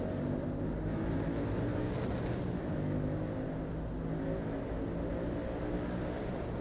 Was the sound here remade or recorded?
recorded